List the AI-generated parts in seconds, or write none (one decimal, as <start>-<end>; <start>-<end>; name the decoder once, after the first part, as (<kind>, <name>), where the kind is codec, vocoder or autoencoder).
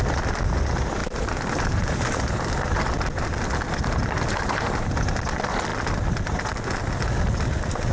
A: 1.0-2.4 (vocoder, BigVGAN v2)